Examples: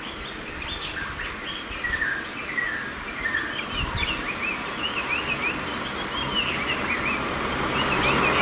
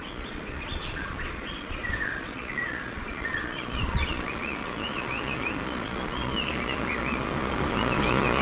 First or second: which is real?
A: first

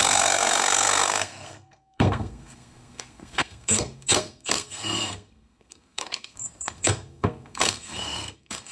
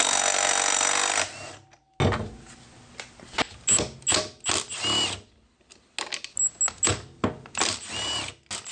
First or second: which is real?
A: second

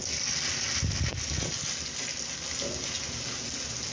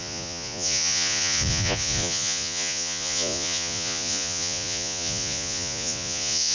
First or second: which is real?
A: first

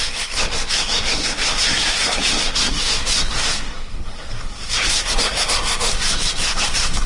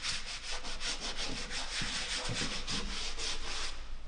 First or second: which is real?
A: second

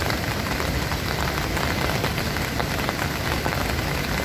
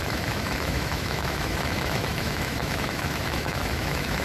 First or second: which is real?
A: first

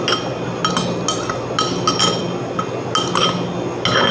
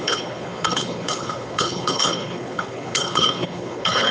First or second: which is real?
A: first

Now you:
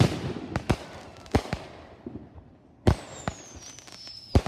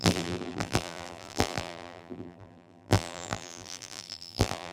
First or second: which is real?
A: first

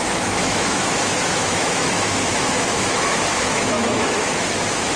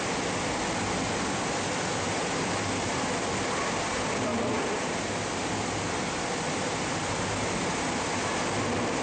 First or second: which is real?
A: second